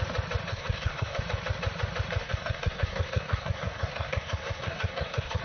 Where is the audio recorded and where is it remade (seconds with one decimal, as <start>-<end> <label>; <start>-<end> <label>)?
0.0-0.5 recorded; 0.5-1.2 remade; 1.2-2.2 recorded; 2.2-5.4 remade